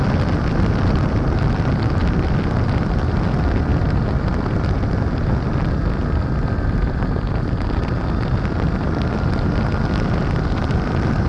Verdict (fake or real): real